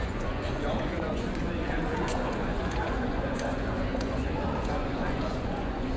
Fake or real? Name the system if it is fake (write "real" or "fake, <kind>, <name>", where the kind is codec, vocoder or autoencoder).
fake, vocoder, Vocos